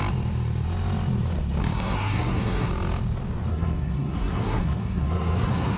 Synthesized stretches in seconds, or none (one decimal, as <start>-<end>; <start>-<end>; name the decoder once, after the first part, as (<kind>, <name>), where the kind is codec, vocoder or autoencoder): 1.6-2.7 (codec, SNAC); 3.5-5.8